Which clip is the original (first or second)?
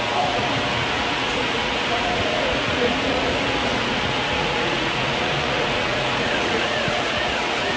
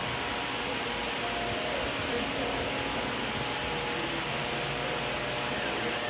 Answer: second